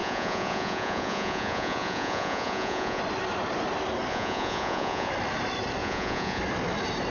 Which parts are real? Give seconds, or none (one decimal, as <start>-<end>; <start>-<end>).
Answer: 3.0-4.1; 5.1-5.8; 6.4-7.1